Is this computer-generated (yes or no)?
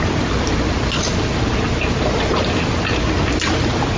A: no